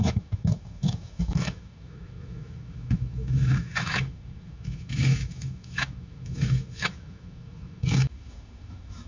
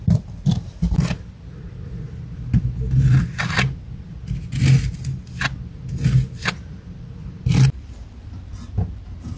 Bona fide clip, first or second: second